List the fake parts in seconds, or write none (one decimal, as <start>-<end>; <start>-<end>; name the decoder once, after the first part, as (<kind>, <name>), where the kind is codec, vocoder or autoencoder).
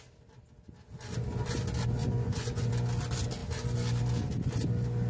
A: 2.0-2.7 (vocoder, Vocos)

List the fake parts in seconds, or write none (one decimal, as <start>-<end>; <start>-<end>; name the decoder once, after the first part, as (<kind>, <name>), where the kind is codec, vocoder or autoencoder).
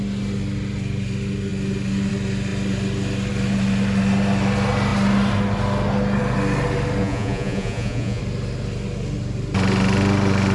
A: 7.0-8.2 (vocoder, Vocos)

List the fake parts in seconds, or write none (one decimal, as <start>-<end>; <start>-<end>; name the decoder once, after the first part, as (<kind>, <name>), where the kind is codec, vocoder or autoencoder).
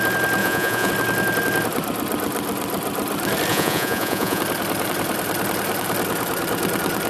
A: 0.4-0.9 (vocoder, Vocos); 3.5-4.4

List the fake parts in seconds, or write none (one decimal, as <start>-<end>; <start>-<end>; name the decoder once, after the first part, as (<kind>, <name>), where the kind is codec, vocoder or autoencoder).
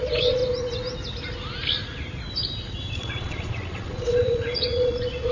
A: 0.0-0.4 (vocoder, Vocos); 2.9-5.3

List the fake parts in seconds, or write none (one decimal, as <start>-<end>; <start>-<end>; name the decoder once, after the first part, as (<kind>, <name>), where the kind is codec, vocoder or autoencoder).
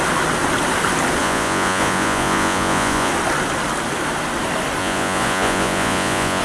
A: 1.2-3.1 (vocoder, Vocos); 4.8-6.4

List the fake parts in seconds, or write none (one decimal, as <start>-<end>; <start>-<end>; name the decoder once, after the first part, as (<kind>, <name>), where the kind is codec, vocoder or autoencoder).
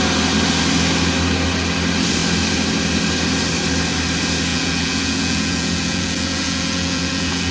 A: 4.5-7.5 (vocoder, Vocos)